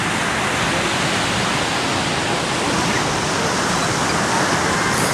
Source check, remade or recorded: recorded